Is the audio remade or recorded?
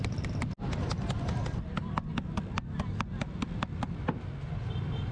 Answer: recorded